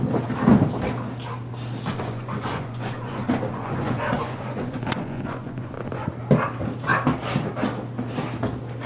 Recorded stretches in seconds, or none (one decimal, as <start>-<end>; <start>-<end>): 0.0-1.9; 6.1-8.9